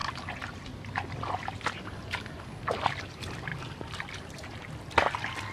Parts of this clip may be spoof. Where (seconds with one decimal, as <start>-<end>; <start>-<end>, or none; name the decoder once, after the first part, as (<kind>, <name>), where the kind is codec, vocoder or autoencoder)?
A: 3.0-3.5 (vocoder, BigVGAN v2); 4.8-5.5